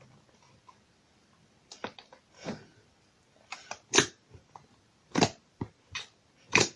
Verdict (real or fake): fake